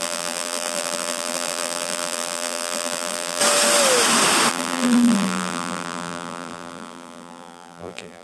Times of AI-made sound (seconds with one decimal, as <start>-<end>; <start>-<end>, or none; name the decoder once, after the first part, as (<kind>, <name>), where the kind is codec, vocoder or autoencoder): 0.0-3.4 (vocoder, BigVGAN v2); 4.5-8.2